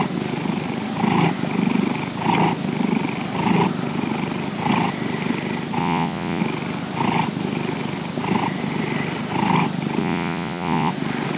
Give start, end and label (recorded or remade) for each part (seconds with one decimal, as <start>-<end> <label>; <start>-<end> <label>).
0.0-5.8 recorded; 5.8-6.4 remade; 6.4-10.0 recorded; 10.0-10.9 remade; 10.9-11.4 recorded